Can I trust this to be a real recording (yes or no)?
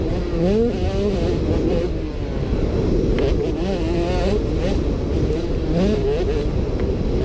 yes